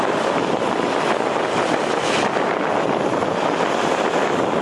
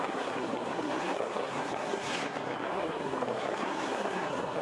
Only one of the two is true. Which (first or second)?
first